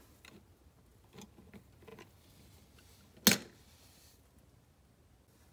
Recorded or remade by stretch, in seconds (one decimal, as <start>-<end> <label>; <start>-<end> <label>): 0.0-5.5 recorded